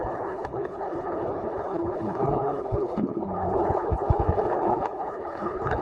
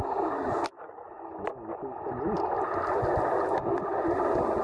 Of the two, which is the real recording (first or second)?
second